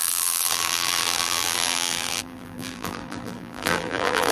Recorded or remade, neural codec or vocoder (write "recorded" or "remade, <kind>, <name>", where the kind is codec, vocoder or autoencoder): remade, vocoder, BigVGAN v2